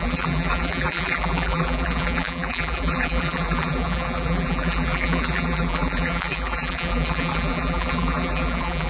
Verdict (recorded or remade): remade